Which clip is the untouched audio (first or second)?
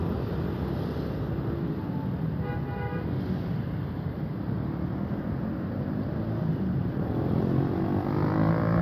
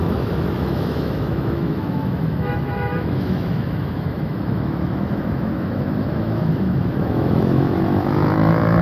first